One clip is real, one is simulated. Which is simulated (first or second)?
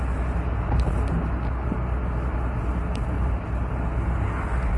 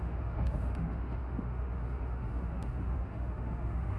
second